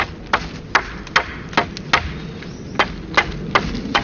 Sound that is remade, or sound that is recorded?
recorded